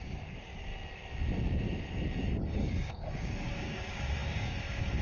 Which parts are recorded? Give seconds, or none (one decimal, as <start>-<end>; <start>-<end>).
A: 0.7-2.4